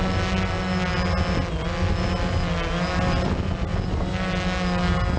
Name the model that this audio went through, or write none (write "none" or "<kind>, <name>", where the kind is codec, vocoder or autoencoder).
none